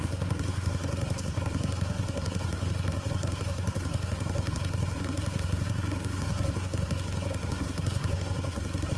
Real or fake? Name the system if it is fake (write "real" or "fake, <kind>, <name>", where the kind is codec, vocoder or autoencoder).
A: fake, codec, SNAC